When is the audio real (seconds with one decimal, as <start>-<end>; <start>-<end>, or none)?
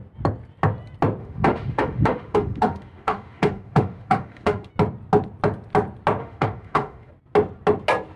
0.0-1.2; 4.7-6.2; 7.1-8.2